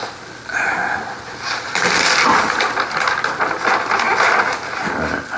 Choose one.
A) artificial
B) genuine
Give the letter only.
B